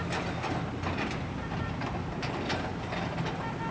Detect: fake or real real